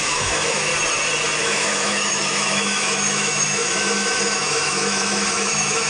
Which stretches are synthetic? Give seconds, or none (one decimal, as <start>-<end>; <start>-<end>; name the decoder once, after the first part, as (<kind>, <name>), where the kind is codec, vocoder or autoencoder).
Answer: 0.0-0.7 (autoencoder, DAC-VAE); 1.4-5.9